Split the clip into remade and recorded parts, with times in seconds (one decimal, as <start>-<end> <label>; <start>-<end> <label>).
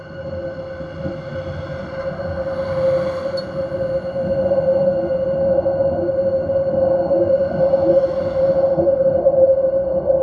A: 0.0-10.2 recorded